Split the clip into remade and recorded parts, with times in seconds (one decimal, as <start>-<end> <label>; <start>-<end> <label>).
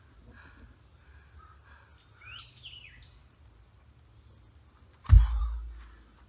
0.0-6.3 recorded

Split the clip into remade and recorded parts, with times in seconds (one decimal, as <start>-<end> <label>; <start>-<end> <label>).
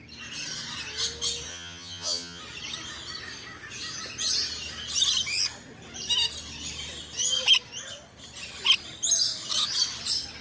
0.0-1.5 recorded; 1.5-2.4 remade; 2.4-10.4 recorded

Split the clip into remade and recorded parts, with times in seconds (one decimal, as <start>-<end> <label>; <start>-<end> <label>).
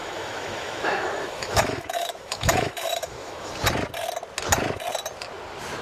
0.0-3.5 remade; 3.5-5.8 recorded